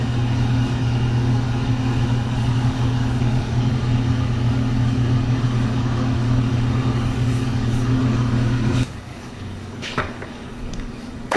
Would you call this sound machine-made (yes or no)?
yes